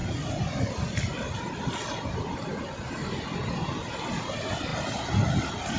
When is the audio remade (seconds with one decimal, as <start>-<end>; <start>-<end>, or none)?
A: none